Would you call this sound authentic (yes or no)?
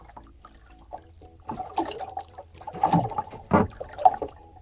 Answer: no